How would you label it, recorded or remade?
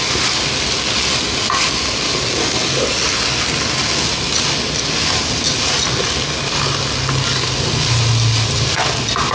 recorded